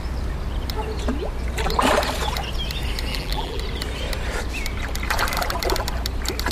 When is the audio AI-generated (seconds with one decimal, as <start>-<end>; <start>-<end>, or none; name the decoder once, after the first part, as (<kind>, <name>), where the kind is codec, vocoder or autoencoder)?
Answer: 3.1-3.6 (vocoder, BigVGAN v2)